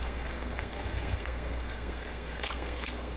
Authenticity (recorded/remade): remade